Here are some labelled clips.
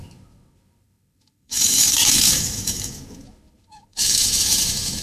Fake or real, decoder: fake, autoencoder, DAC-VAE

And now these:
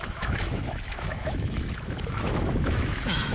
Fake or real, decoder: fake, autoencoder, DAC-VAE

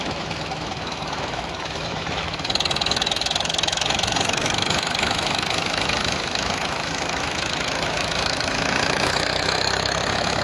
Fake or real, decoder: fake, autoencoder, DAC-VAE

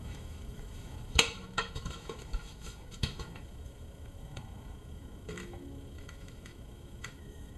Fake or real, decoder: fake, autoencoder, DAC-VAE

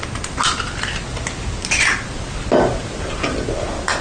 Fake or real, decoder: real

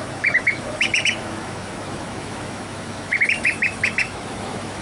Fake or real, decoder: fake, autoencoder, DAC-VAE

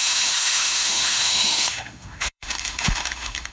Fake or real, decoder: fake, autoencoder, DAC-VAE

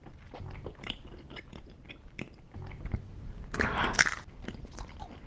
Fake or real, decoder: real